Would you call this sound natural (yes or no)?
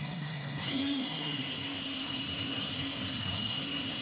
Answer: no